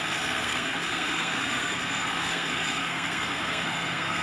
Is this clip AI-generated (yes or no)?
yes